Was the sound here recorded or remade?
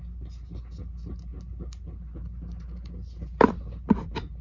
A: recorded